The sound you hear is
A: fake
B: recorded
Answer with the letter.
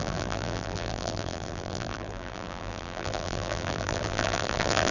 A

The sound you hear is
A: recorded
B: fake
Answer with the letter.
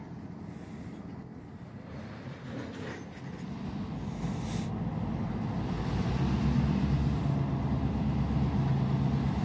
A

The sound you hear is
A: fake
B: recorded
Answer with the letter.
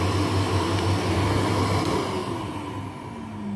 B